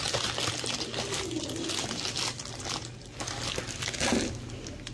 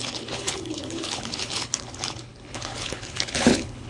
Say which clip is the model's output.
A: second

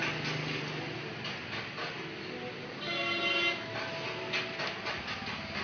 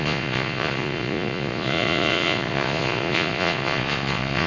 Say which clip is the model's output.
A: second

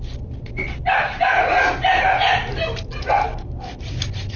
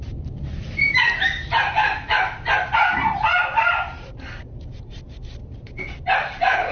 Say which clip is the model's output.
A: second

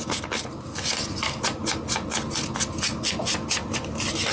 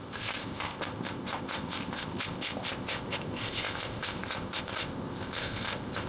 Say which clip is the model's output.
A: second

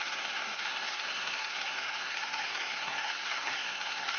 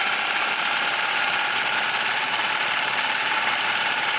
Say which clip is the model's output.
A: first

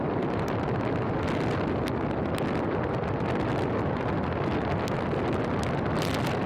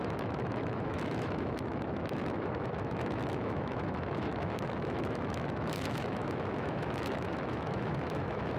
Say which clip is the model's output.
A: second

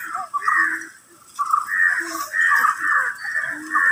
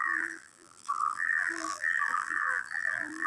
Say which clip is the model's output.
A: second